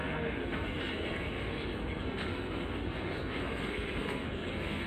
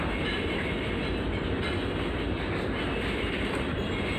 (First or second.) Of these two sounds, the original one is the second